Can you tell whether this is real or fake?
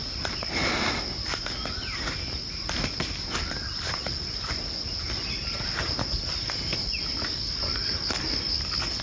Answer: real